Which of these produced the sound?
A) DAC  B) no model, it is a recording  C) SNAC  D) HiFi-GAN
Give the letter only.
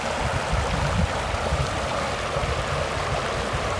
B